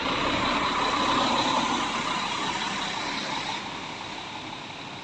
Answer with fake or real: real